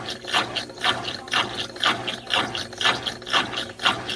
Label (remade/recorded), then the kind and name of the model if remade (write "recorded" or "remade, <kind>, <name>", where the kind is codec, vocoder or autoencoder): recorded